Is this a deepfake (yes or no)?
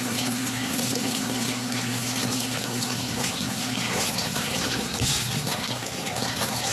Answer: yes